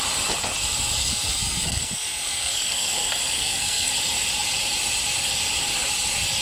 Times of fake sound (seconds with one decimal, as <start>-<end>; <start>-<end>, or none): 1.0-3.9